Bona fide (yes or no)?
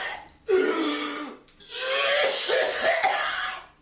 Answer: yes